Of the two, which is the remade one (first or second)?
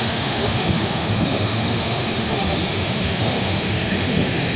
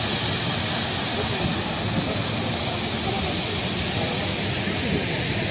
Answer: first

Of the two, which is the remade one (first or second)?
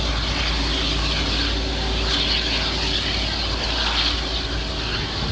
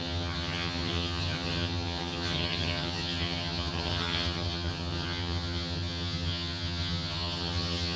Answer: second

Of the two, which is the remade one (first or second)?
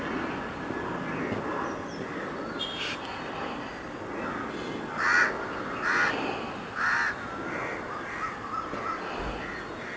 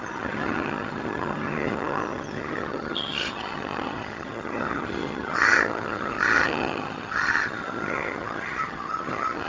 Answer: second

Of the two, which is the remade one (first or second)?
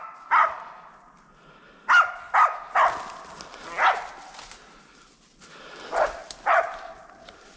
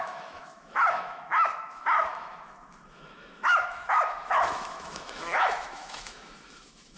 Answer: second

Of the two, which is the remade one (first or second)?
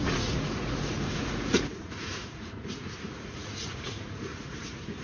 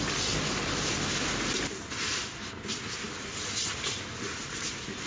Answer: first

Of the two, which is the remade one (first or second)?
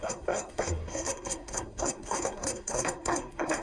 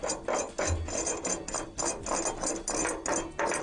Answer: first